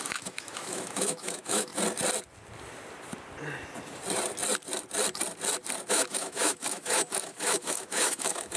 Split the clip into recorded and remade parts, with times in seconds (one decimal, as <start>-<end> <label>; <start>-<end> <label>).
0.0-1.7 remade; 1.7-5.9 recorded; 5.9-8.6 remade

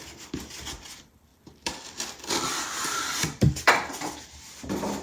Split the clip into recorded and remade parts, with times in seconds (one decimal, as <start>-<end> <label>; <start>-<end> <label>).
0.0-1.3 recorded; 1.3-3.7 remade; 3.7-5.0 recorded

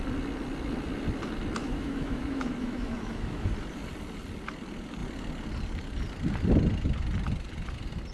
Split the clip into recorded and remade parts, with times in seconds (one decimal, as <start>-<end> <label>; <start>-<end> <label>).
0.0-1.6 recorded; 1.6-3.5 remade; 3.5-8.1 recorded

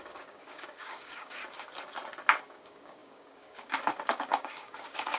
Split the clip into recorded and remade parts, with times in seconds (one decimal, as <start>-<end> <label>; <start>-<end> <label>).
0.0-1.4 remade; 1.4-2.4 recorded; 2.4-5.2 remade

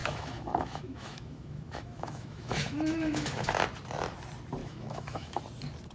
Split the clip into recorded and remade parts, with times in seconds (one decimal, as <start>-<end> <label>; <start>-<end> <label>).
0.0-3.5 remade; 3.5-4.6 recorded; 4.6-5.4 remade; 5.4-5.9 recorded

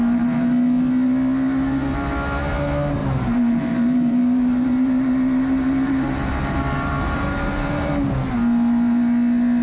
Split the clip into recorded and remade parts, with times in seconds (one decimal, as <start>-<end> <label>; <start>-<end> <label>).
0.0-3.0 recorded; 3.0-7.9 remade; 7.9-9.6 recorded

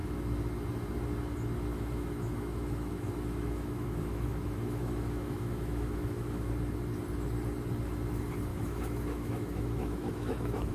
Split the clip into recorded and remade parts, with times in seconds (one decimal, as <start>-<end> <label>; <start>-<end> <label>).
0.0-1.7 recorded; 1.7-6.5 remade; 6.5-8.5 recorded; 8.5-10.7 remade

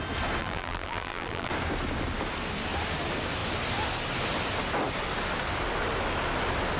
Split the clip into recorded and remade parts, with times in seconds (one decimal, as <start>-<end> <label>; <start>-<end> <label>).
0.0-0.4 recorded; 0.4-1.5 remade; 1.5-6.8 recorded